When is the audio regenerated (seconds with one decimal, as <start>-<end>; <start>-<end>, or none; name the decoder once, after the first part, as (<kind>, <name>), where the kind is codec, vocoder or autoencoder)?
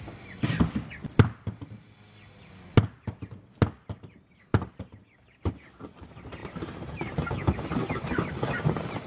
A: 6.4-7.1 (vocoder, BigVGAN v2)